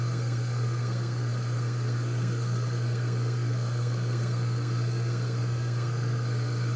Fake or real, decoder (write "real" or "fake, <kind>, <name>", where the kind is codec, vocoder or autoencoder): fake, codec, SNAC